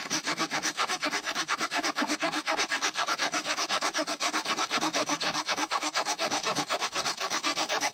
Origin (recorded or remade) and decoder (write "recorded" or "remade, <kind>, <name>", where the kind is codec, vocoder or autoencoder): remade, codec, DAC